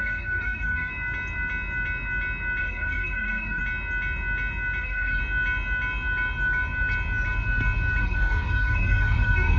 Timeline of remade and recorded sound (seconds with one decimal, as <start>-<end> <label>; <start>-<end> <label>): 0.0-0.9 remade; 0.9-2.6 recorded; 2.6-3.6 remade; 3.6-4.8 recorded; 4.8-5.2 remade; 5.2-8.0 recorded; 8.0-9.6 remade